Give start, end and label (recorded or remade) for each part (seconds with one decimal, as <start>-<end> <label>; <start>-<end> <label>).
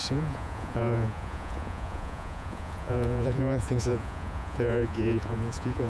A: 0.0-5.9 remade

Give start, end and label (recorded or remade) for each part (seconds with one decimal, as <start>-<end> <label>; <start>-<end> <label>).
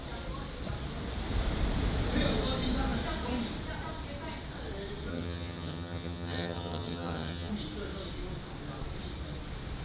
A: 0.0-5.1 recorded; 5.1-7.5 remade; 7.5-9.8 recorded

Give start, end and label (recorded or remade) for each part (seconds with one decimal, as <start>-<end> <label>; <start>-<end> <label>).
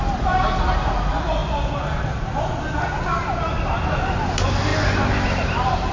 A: 0.0-5.9 recorded